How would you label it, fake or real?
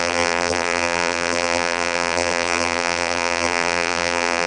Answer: fake